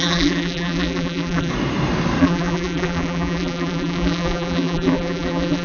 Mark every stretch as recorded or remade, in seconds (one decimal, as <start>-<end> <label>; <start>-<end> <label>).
0.0-1.5 remade; 1.5-2.2 recorded; 2.2-5.6 remade